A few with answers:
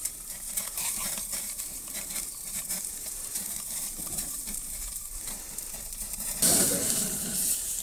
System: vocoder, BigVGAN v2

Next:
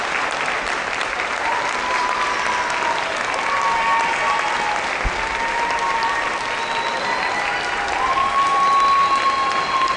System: none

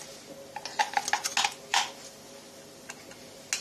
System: none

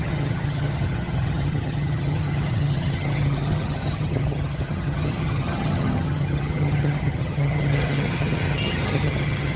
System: vocoder, HiFi-GAN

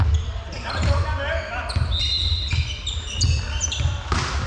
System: none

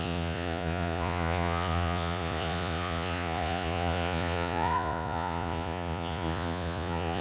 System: vocoder, Vocos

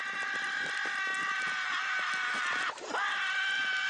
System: none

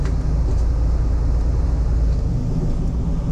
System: none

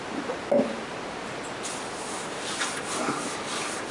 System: none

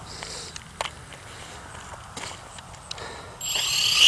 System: none